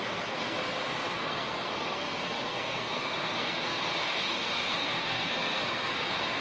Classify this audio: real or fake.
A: fake